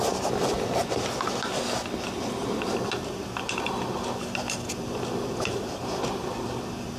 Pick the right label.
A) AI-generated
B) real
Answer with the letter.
B